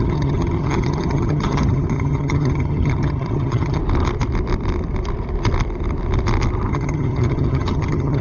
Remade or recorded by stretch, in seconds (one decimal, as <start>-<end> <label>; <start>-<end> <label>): 0.0-3.8 remade; 3.8-6.7 recorded; 6.7-8.2 remade